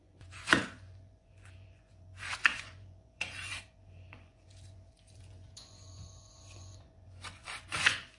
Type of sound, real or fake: fake